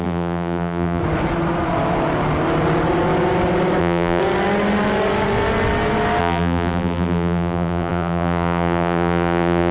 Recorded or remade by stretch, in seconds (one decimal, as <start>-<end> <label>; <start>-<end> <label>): 0.0-1.0 remade; 1.0-3.8 recorded; 3.8-4.2 remade; 4.2-6.2 recorded; 6.2-9.7 remade